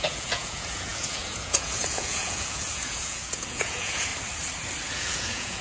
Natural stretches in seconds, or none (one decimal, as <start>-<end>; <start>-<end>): 4.1-4.9